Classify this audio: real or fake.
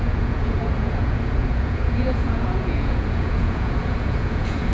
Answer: fake